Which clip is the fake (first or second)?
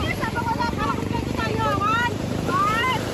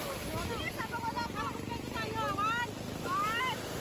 first